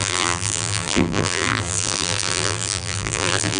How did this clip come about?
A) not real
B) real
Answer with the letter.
A